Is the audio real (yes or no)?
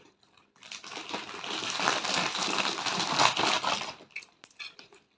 yes